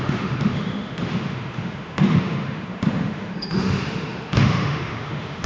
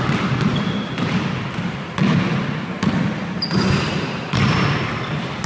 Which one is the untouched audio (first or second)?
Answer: second